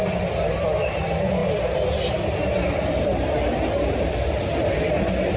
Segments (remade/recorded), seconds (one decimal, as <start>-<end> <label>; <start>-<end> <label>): 0.0-5.4 recorded

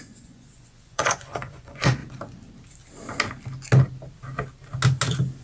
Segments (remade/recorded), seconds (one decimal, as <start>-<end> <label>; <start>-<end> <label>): 0.0-2.0 remade; 2.0-5.4 recorded

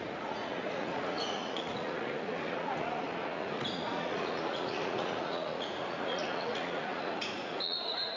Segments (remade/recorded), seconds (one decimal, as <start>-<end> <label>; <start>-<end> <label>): 0.0-8.2 remade